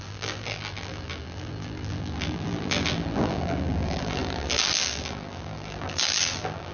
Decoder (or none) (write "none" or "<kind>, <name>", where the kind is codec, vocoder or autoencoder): vocoder, BigVGAN v2